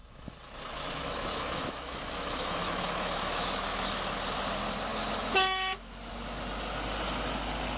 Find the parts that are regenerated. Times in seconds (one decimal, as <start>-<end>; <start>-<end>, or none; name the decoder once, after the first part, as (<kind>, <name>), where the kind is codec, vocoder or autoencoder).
0.0-3.9 (autoencoder, DAC-VAE); 4.9-6.1